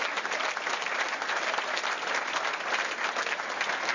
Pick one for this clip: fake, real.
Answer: real